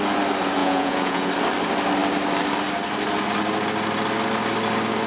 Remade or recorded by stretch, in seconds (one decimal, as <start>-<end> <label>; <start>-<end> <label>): 0.0-0.6 recorded; 0.6-1.3 remade; 1.3-5.1 recorded